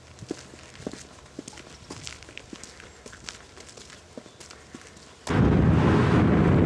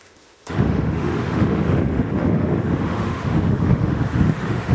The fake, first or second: second